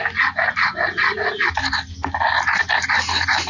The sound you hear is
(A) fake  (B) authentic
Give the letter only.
B